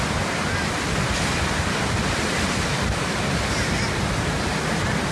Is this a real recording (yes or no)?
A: yes